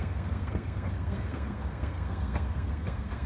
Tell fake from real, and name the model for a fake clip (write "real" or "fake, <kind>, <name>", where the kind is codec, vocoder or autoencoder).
fake, codec, SNAC